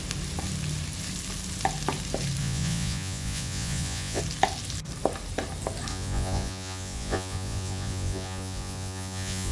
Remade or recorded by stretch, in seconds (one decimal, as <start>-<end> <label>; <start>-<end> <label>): 0.0-2.4 recorded; 2.4-4.2 remade; 4.2-5.9 recorded; 5.9-9.5 remade